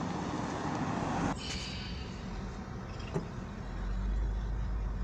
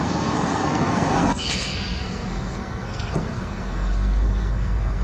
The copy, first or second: second